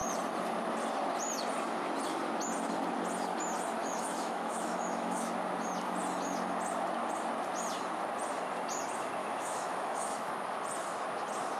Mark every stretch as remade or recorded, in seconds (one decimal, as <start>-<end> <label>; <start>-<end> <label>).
0.0-3.8 recorded; 3.8-5.3 remade; 5.3-9.2 recorded; 9.2-10.3 remade; 10.3-11.6 recorded